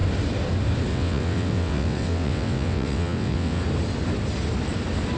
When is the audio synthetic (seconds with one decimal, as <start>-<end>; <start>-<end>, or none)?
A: 0.9-3.6